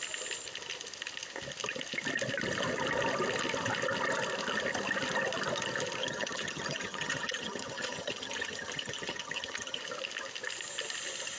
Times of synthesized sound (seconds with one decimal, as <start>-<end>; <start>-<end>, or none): 6.0-9.8